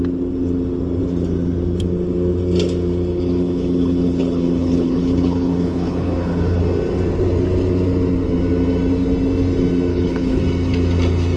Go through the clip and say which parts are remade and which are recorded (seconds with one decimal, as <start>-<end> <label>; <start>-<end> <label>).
0.0-3.1 recorded; 3.1-6.6 remade; 6.6-9.9 recorded; 9.9-10.4 remade; 10.4-11.4 recorded

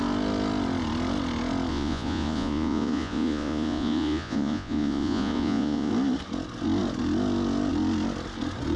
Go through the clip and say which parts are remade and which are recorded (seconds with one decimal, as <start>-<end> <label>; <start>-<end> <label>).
0.0-1.7 recorded; 1.7-5.9 remade; 5.9-8.8 recorded

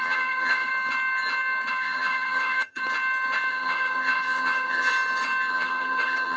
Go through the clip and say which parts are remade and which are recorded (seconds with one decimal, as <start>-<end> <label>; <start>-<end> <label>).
0.0-0.7 remade; 0.7-1.7 recorded; 1.7-2.8 remade; 2.8-3.5 recorded; 3.5-4.9 remade; 4.9-5.5 recorded; 5.5-6.4 remade